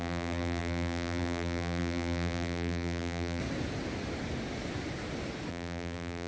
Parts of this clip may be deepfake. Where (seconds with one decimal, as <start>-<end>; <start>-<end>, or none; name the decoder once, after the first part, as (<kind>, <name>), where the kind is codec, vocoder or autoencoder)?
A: 0.0-3.4 (vocoder, BigVGAN v2); 5.5-6.3